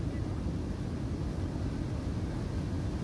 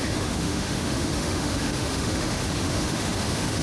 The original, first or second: first